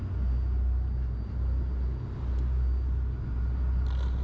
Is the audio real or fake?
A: real